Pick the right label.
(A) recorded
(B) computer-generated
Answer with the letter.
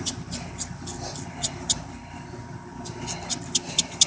A